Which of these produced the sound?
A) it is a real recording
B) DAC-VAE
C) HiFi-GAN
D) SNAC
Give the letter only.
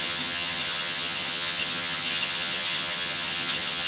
C